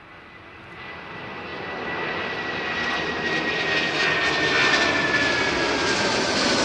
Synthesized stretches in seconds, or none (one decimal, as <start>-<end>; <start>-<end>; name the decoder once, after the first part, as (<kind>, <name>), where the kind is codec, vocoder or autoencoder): none